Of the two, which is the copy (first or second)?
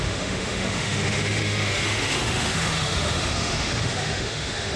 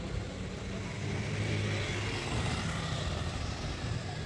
first